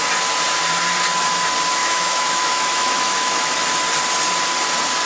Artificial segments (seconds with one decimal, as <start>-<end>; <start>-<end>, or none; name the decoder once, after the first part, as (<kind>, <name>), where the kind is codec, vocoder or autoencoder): 1.8-3.5 (autoencoder, DAC-VAE)

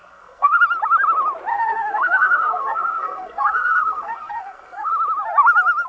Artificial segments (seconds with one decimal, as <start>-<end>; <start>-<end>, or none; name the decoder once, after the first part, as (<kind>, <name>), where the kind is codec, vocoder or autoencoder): 0.0-0.6 (codec, SNAC); 1.5-4.9

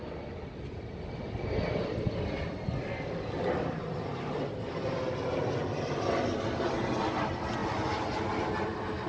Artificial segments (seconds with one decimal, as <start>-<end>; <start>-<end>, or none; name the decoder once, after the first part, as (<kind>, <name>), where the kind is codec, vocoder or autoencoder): none

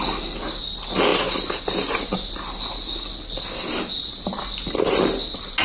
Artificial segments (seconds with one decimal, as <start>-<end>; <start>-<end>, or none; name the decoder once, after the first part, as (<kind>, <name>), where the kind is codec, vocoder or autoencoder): none

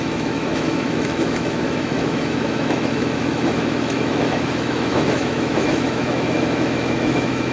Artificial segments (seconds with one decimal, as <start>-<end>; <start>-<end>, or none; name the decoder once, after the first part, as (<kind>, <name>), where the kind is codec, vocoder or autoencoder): 0.0-7.5 (autoencoder, DAC-VAE)

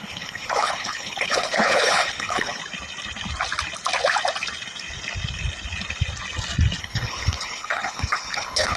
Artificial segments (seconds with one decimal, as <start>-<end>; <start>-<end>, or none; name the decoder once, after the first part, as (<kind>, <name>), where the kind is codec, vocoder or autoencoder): 0.0-2.6 (codec, HILCodec); 6.8-8.8

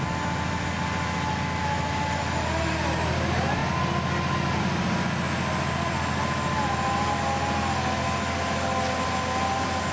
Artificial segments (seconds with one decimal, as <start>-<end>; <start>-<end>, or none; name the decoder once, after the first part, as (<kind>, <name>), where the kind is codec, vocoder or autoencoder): none

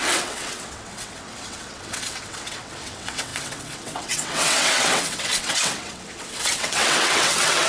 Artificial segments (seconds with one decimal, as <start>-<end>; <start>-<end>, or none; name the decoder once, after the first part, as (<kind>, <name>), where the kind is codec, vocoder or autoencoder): 0.0-7.7 (vocoder, WaveNeXt)